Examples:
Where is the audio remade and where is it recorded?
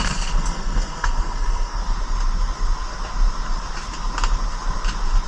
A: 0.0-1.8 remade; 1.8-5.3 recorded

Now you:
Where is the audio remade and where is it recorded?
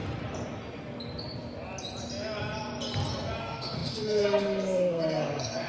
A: 0.0-3.4 recorded; 3.4-5.7 remade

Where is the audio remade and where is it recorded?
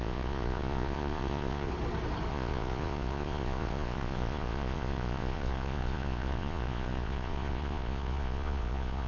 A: 0.0-1.7 remade; 1.7-2.3 recorded; 2.3-9.1 remade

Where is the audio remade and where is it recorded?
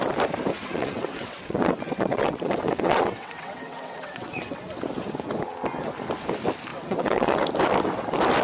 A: 0.0-0.7 recorded; 0.7-4.6 remade; 4.6-6.7 recorded; 6.7-7.4 remade; 7.4-8.4 recorded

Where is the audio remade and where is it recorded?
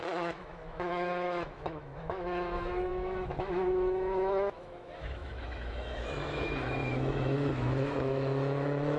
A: 0.0-9.0 remade